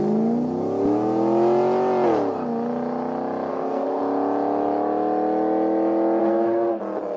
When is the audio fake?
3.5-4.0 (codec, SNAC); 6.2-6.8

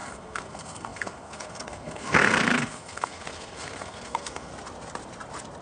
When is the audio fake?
0.0-4.5 (codec, SNAC)

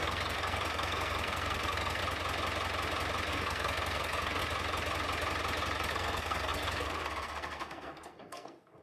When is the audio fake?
0.0-2.0 (codec, SNAC); 3.3-4.4; 5.9-8.8